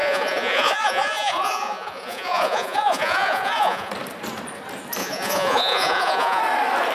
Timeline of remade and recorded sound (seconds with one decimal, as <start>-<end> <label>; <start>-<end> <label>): 0.0-3.9 remade; 3.9-5.0 recorded; 5.0-6.4 remade; 6.4-6.9 recorded